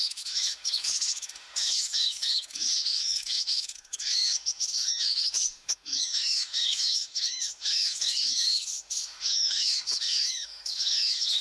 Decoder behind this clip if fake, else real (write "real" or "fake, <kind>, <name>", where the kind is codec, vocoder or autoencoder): fake, autoencoder, DAC-VAE